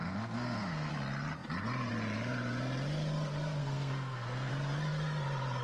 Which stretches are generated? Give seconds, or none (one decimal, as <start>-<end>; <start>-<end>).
0.0-0.9; 3.6-4.5